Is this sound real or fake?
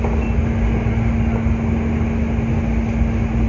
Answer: real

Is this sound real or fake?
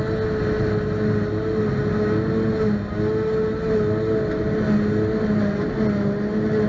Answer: real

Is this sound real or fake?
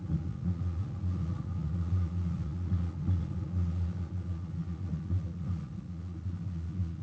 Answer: fake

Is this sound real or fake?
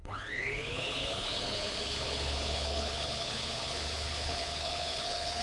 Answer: fake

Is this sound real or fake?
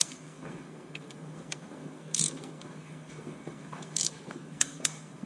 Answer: fake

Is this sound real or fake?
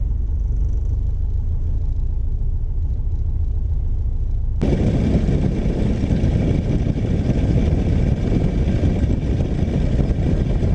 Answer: real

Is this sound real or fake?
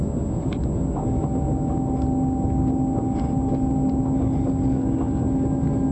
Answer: real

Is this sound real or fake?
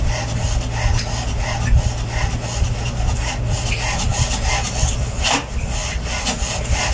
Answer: real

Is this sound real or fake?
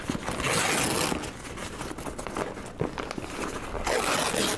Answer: real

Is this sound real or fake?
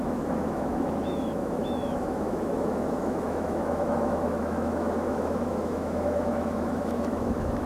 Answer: fake